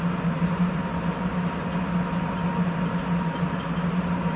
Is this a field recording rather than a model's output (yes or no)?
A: yes